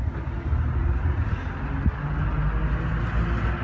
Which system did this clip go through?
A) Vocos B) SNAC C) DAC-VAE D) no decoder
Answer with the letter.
D